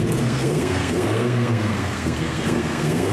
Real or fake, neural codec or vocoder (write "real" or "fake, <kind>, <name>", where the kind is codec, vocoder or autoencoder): fake, codec, SNAC